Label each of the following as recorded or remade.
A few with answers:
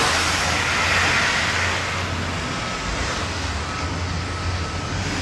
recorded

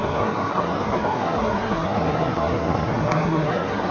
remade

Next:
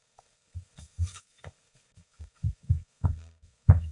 remade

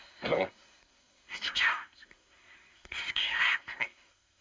remade